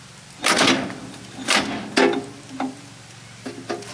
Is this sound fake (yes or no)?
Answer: no